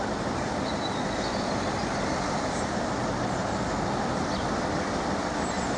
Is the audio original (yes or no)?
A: yes